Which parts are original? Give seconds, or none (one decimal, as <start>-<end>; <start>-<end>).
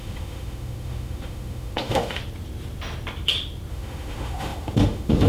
2.2-3.7